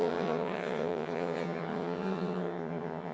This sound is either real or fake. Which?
fake